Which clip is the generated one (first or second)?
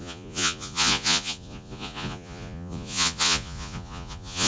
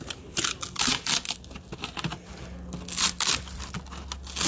first